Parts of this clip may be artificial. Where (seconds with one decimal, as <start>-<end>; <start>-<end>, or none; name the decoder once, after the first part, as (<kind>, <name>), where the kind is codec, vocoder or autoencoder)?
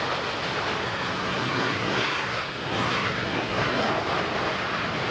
0.8-3.9 (codec, SNAC)